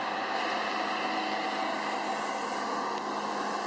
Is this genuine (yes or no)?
yes